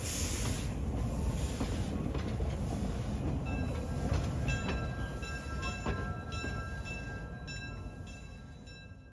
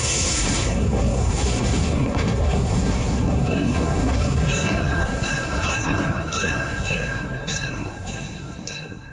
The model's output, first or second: second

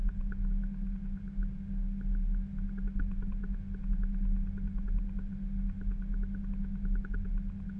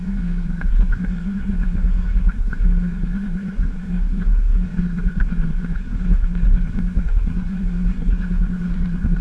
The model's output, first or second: second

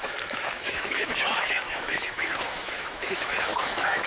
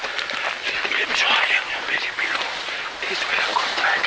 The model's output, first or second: first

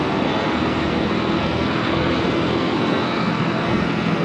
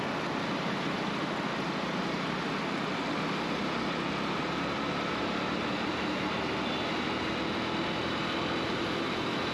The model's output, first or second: first